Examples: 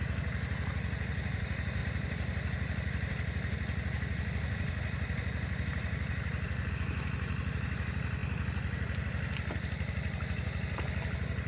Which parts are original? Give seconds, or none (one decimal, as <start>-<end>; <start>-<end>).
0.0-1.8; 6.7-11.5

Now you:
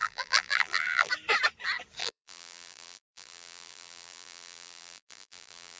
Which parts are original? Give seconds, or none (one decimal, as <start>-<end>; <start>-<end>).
1.1-2.0

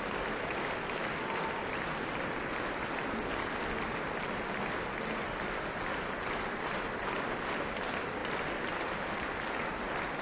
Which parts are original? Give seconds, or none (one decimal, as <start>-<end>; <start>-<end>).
0.0-10.2